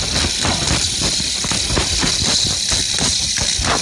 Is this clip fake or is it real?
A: real